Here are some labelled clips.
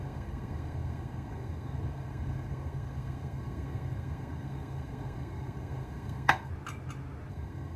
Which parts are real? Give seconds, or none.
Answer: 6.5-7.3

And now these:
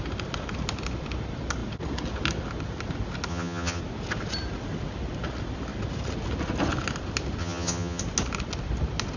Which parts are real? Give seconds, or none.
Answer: 0.0-3.3; 3.8-7.4; 8.0-9.2